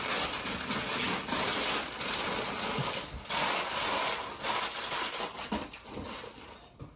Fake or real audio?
real